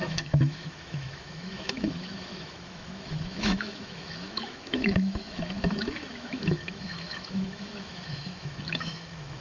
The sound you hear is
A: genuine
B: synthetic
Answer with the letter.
B